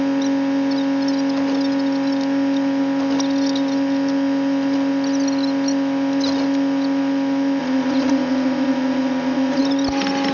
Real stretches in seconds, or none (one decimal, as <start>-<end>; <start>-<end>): 0.0-7.6; 9.6-10.3